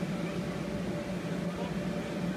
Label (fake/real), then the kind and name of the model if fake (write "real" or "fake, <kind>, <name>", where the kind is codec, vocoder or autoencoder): real